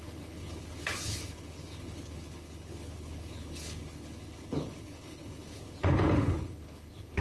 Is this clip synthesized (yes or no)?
yes